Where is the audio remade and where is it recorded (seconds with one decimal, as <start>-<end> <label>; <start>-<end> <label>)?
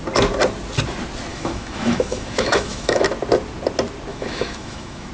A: 0.0-1.3 recorded; 1.3-3.0 remade; 3.0-4.1 recorded; 4.1-5.1 remade